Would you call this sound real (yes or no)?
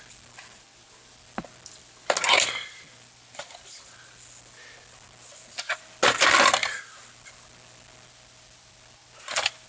yes